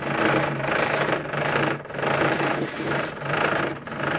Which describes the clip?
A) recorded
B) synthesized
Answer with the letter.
B